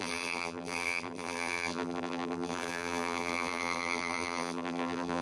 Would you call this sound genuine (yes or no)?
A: no